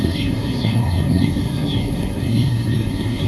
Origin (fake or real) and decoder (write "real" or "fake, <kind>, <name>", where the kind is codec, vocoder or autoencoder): fake, codec, SNAC